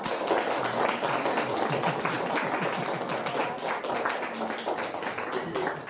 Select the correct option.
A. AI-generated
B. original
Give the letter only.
B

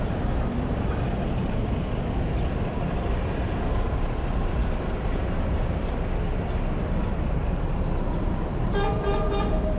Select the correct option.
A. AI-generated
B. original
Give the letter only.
B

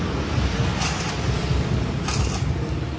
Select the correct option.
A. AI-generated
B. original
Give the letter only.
B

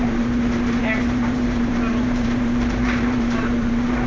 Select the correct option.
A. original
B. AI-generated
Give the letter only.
B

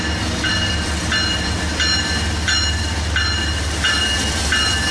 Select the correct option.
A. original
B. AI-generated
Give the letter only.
A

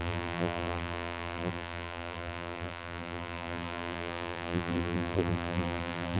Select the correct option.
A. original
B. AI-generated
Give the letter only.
B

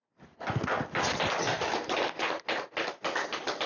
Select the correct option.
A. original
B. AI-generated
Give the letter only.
A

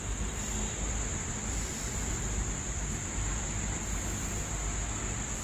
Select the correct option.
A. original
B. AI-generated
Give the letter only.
B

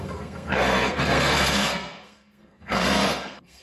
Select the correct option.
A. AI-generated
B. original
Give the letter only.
A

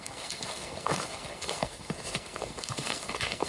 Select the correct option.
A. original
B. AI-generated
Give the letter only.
B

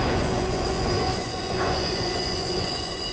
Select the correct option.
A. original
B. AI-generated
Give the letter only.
B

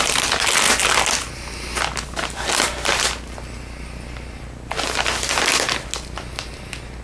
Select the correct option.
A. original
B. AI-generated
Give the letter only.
A